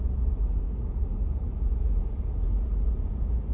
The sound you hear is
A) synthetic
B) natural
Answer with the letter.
A